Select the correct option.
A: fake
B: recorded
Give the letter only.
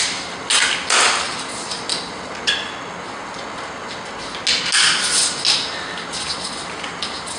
B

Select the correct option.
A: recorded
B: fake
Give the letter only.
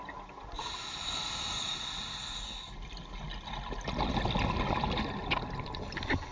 A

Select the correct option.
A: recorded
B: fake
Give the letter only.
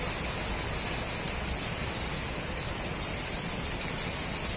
A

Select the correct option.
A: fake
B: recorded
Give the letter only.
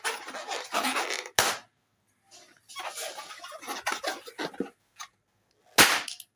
B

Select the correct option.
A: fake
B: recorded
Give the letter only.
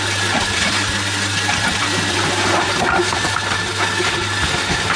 B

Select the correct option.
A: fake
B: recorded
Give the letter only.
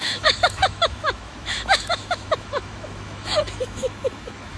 A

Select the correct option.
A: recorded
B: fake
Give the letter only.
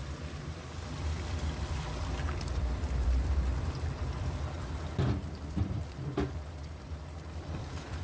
B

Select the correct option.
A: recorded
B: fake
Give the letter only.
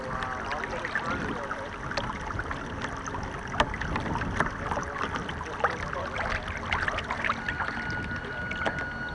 A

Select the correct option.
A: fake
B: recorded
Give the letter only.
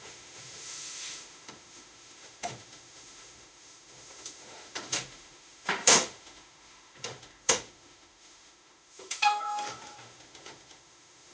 A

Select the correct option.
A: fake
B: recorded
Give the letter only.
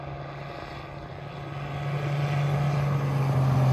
B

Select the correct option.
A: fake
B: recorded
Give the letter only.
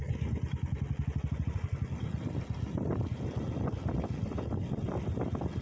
B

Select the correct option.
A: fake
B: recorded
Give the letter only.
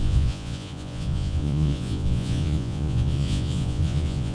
A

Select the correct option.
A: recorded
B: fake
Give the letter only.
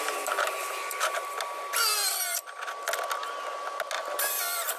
A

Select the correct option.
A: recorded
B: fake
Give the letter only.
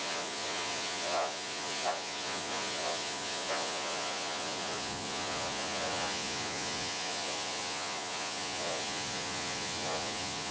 B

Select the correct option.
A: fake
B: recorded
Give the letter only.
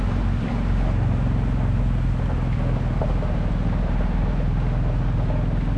B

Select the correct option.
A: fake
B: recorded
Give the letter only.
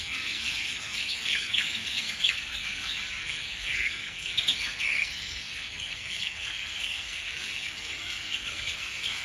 A